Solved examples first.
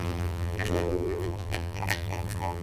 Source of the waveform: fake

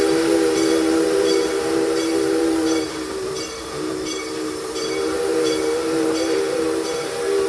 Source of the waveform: fake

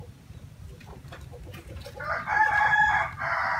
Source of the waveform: fake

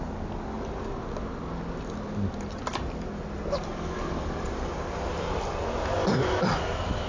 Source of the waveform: real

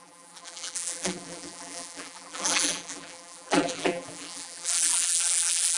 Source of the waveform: fake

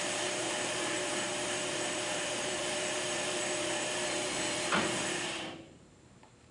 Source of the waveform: fake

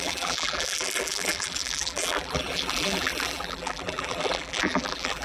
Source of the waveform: fake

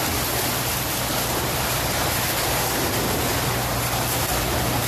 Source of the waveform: real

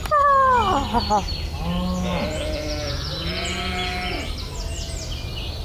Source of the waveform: real